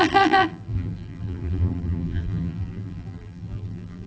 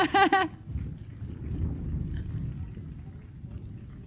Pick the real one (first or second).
second